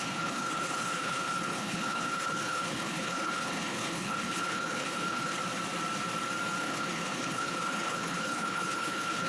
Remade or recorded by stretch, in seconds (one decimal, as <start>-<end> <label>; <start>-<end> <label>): 0.0-5.4 remade; 5.4-6.6 recorded; 6.6-9.3 remade